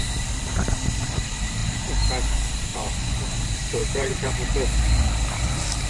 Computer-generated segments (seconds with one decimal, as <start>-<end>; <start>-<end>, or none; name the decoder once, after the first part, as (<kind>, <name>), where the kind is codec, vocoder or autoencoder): 2.7-3.4 (vocoder, Vocos); 3.8-4.3